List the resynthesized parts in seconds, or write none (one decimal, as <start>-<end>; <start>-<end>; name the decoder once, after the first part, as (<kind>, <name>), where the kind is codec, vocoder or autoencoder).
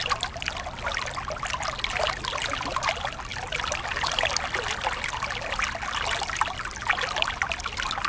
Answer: none